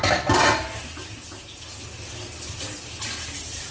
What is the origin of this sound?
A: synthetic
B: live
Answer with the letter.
B